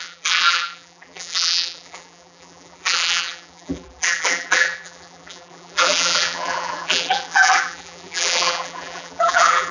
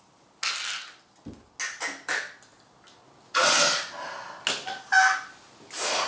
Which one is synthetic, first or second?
first